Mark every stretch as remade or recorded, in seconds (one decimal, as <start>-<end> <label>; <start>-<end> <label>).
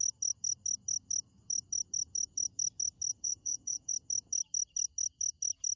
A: 0.0-3.1 recorded; 3.1-3.9 remade; 3.9-5.8 recorded